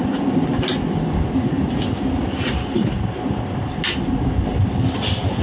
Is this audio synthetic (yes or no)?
no